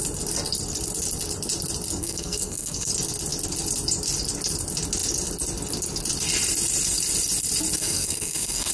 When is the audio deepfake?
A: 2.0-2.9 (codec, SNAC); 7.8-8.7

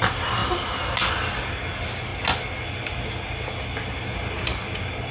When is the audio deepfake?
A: none

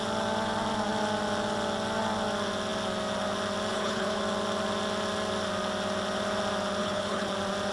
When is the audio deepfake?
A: 3.7-4.2 (codec, HILCodec); 6.8-7.3

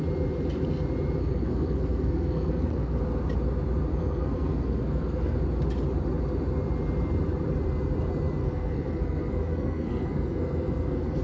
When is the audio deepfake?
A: 1.2-3.0 (codec, SNAC); 3.9-5.4; 8.4-11.2